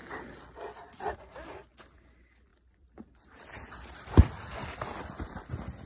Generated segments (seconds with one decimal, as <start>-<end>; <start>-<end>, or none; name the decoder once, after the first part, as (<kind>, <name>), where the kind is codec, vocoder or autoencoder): 2.5-5.4 (vocoder, BigVGAN v2)

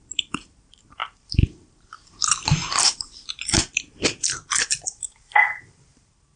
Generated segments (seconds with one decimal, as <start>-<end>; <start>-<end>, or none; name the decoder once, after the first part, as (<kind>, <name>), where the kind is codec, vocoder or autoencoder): 0.0-6.4 (vocoder, BigVGAN v2)